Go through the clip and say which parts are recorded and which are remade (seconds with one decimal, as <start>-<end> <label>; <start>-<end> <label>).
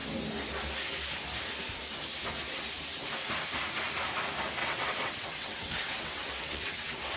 0.0-4.6 recorded; 4.6-7.2 remade